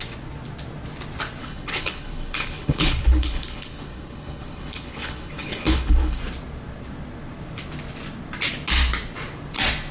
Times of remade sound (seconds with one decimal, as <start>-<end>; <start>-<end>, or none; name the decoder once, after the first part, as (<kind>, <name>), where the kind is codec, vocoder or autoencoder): 1.4-6.2 (codec, HILCodec)